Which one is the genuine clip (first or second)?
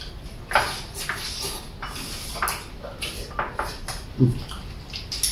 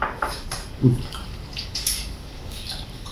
first